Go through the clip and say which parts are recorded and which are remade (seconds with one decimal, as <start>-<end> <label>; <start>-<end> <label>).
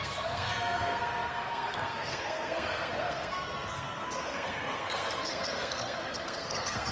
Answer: 0.0-6.9 remade